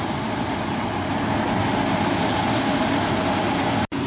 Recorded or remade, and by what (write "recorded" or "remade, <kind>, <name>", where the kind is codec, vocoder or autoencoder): recorded